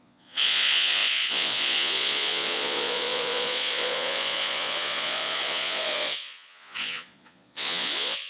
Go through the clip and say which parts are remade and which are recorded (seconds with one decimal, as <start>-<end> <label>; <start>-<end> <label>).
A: 0.0-8.3 remade